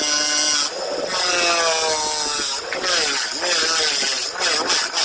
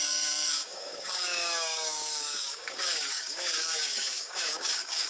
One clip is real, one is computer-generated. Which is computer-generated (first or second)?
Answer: second